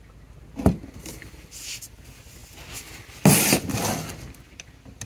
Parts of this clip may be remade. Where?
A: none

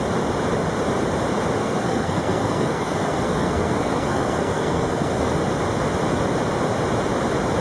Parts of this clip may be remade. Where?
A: 1.6-5.4 (codec, SNAC)

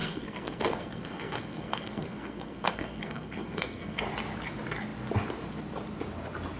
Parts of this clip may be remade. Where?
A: 0.0-4.0 (codec, SNAC)

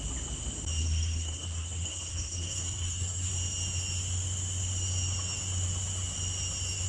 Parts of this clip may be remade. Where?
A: 0.8-3.3 (codec, SNAC)